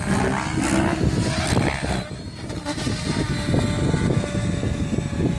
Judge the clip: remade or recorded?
recorded